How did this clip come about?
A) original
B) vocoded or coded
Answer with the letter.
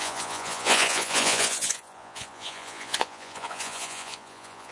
B